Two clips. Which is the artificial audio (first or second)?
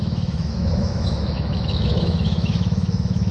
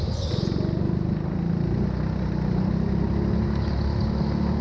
first